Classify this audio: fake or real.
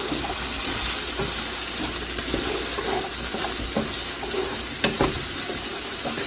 real